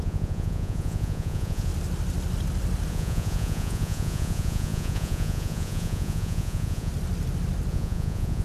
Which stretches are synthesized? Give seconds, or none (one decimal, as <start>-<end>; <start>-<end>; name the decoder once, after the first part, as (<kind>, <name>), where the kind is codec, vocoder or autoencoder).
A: 0.0-1.7 (vocoder, Vocos); 2.9-6.9; 7.7-8.4